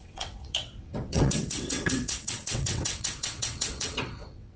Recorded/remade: remade